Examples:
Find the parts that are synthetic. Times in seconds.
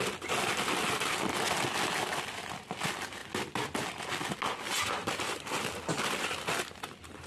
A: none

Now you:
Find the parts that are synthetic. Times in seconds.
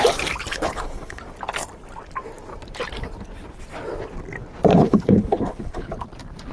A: 0.5-1.2; 4.7-5.9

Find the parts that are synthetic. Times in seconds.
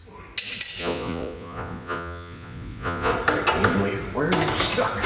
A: 0.8-3.1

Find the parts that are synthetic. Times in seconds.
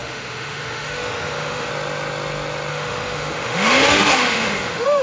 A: 0.0-1.7; 2.7-5.0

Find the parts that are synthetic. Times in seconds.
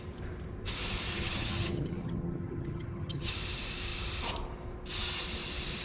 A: 1.1-3.3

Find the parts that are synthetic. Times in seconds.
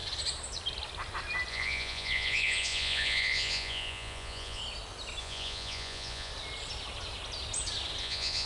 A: 1.5-4.6; 5.2-6.3; 8.0-8.5